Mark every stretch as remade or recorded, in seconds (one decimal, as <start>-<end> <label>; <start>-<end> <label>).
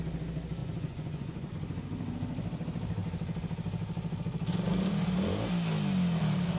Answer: 0.0-0.6 recorded; 0.6-1.5 remade; 1.5-6.6 recorded